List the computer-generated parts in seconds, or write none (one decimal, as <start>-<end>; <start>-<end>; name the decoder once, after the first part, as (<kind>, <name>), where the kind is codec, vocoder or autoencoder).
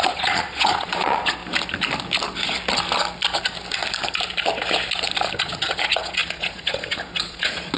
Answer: 0.0-1.4 (vocoder, Vocos); 5.4-7.8